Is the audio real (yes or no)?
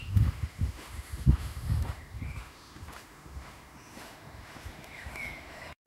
no